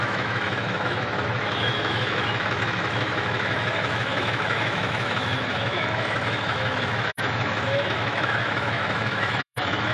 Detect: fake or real fake